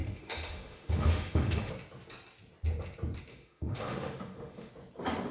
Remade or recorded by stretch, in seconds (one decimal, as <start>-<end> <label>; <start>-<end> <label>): 0.0-1.7 remade; 1.7-3.3 recorded; 3.3-4.7 remade; 4.7-5.3 recorded